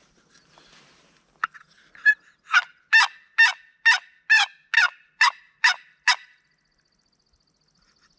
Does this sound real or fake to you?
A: real